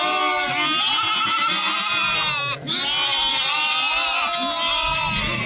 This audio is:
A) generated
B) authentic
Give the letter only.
B